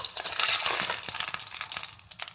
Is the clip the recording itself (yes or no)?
yes